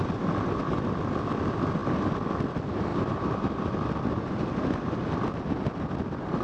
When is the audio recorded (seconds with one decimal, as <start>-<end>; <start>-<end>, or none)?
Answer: 0.0-2.9; 3.7-6.4